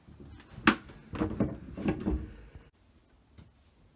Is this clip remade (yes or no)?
no